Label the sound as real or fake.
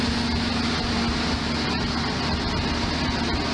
real